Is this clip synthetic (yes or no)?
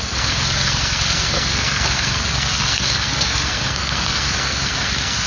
yes